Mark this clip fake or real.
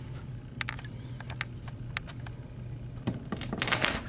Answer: real